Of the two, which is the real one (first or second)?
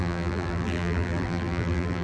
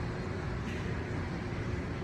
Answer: second